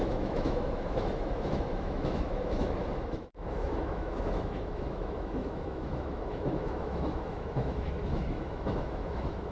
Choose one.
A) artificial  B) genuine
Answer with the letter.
A